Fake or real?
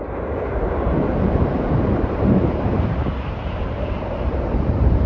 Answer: fake